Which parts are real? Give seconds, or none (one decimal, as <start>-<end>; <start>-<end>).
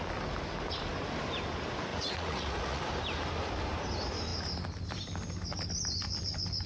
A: 0.0-1.9; 2.8-6.7